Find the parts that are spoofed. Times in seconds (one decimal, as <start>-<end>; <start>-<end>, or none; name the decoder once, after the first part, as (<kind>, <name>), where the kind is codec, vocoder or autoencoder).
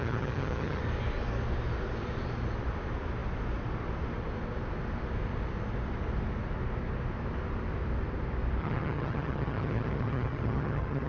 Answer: 0.0-0.8 (vocoder, HiFi-GAN); 8.6-11.1